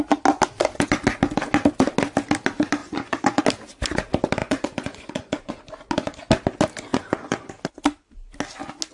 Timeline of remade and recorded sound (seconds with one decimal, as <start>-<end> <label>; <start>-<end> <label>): 0.0-2.8 recorded; 2.8-3.4 remade; 3.4-4.4 recorded; 4.4-5.5 remade; 5.5-6.9 recorded; 6.9-7.5 remade; 7.5-8.9 recorded